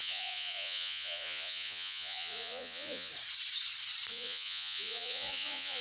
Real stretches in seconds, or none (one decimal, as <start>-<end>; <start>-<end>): 3.1-4.1